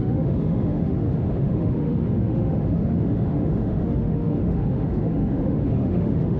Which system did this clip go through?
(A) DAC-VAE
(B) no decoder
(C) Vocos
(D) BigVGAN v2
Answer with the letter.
A